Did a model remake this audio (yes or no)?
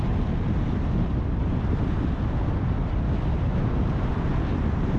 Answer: no